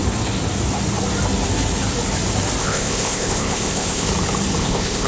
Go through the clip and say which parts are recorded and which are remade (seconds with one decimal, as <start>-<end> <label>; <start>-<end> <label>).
0.0-2.6 recorded; 2.6-4.1 remade; 4.1-4.6 recorded; 4.6-5.1 remade